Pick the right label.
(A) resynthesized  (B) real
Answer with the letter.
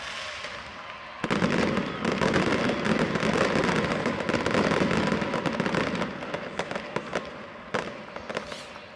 B